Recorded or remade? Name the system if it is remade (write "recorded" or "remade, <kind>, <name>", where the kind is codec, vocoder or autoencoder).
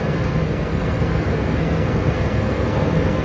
remade, codec, SNAC